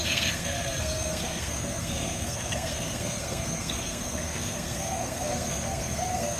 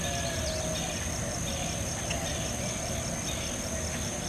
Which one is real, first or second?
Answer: second